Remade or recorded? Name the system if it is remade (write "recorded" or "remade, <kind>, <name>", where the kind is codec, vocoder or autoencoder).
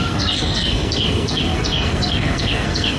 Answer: remade, codec, SNAC